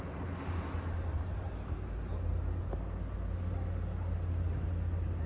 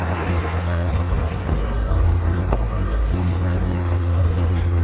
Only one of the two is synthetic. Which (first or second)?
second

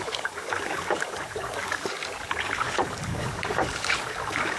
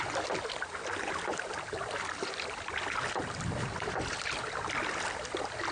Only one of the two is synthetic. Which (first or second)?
first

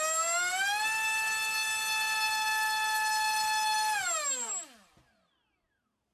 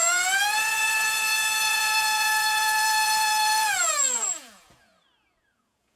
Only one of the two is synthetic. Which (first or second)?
second